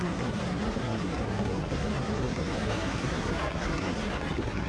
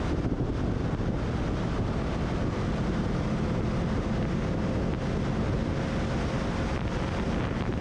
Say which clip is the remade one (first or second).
first